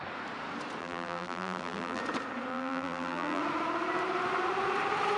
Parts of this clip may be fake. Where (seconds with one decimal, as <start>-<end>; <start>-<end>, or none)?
0.8-2.0; 2.5-3.4